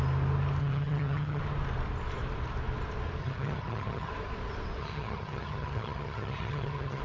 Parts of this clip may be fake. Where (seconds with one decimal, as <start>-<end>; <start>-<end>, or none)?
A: 0.6-1.4; 3.2-4.1; 4.8-7.0